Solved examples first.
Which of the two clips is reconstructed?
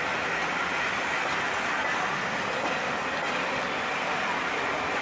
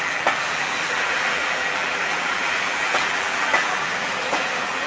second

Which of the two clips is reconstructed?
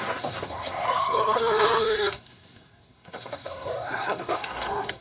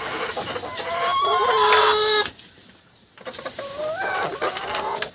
first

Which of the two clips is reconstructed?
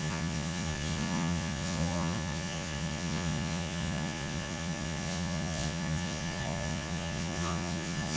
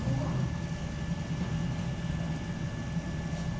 first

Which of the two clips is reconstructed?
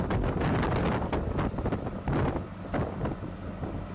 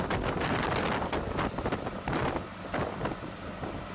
second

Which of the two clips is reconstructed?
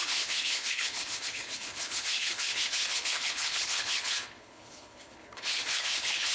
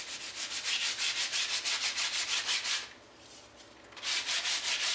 first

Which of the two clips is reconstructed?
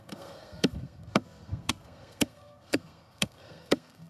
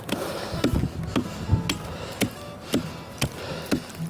first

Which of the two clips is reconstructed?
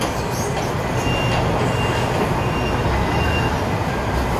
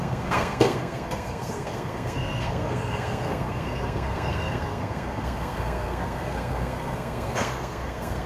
second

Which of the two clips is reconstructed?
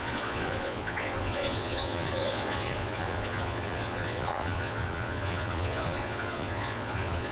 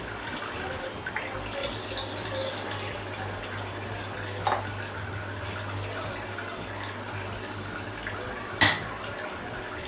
first